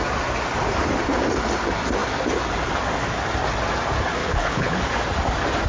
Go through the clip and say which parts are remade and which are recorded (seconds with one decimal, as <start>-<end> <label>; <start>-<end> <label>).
0.0-4.2 recorded; 4.2-4.8 remade; 4.8-5.7 recorded